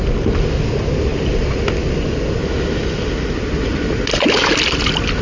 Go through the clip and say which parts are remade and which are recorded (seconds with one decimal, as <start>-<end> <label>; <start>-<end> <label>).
0.0-5.2 recorded